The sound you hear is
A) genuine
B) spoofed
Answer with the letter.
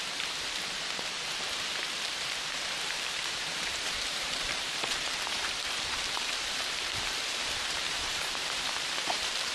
B